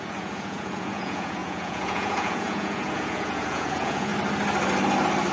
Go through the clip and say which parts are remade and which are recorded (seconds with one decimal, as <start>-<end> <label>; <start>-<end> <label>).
0.0-4.1 remade; 4.1-5.3 recorded

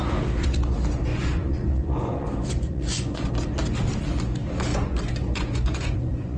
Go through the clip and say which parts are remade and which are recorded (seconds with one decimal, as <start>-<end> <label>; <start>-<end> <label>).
0.0-1.1 recorded; 1.1-3.3 remade; 3.3-4.7 recorded; 4.7-6.4 remade

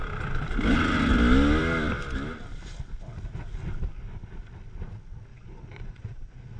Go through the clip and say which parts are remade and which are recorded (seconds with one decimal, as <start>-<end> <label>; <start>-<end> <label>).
0.0-5.3 recorded; 5.3-6.6 remade

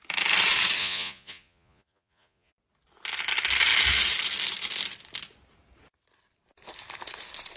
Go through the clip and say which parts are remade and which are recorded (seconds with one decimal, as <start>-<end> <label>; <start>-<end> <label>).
0.0-0.8 recorded; 0.8-2.5 remade; 2.5-7.6 recorded

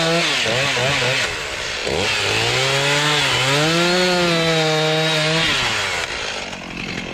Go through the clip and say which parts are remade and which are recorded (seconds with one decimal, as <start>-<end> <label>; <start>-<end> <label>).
0.0-7.1 recorded

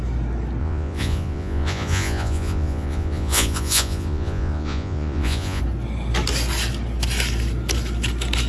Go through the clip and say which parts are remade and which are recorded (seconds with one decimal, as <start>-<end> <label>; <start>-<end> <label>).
0.0-0.6 recorded; 0.6-5.6 remade; 5.6-8.5 recorded

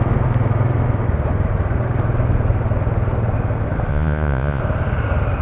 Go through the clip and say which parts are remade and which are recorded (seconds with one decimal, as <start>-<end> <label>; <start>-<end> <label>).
0.0-3.9 recorded; 3.9-4.6 remade; 4.6-5.4 recorded

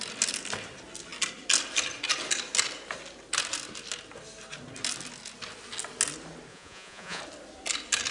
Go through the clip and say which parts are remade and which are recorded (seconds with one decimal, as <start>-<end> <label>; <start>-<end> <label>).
0.0-6.5 recorded; 6.5-7.2 remade; 7.2-8.1 recorded